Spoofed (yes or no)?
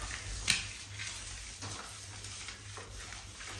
no